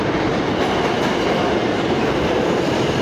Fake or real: real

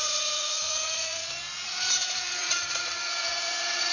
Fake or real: fake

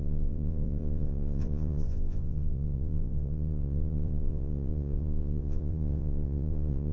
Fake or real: fake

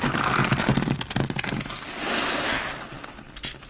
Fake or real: real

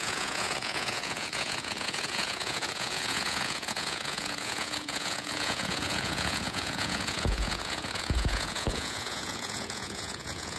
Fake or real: fake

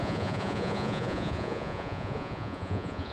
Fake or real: fake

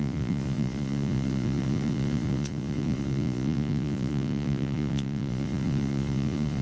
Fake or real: fake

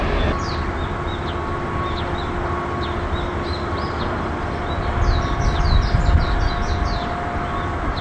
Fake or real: real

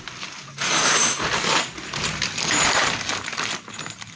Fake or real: real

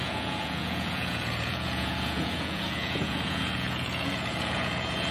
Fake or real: fake